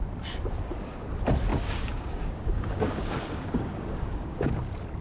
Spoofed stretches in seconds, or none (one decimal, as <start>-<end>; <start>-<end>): 1.5-4.5